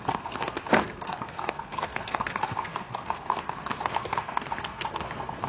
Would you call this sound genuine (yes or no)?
no